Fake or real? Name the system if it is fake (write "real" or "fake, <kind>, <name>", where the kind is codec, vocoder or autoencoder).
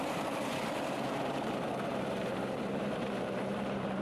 fake, vocoder, BigVGAN v2